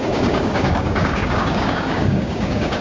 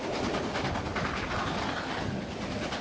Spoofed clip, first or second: first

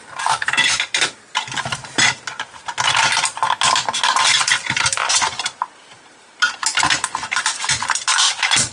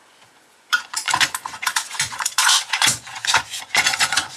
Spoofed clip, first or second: second